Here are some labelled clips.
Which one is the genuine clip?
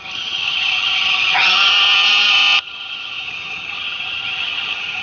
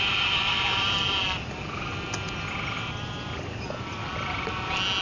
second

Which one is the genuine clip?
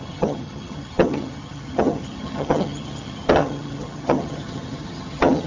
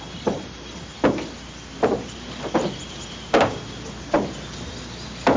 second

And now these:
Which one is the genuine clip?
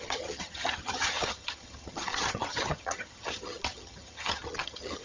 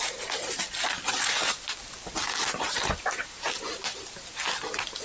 second